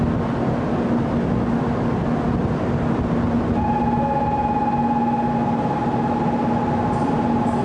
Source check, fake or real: real